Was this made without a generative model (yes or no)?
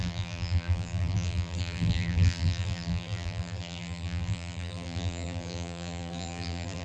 no